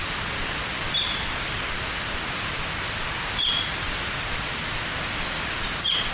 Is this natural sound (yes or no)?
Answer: yes